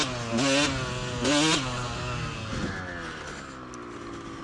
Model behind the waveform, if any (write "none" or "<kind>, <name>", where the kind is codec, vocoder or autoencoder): none